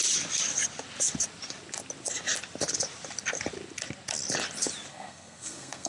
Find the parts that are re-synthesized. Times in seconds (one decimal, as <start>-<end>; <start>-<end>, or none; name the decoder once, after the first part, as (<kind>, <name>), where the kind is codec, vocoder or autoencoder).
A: 4.9-5.9 (codec, SNAC)